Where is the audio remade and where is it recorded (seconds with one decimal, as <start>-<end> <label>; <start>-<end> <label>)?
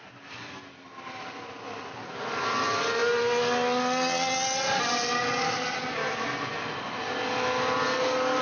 0.0-8.4 recorded